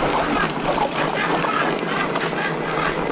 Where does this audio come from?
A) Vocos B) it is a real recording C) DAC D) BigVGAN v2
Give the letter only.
B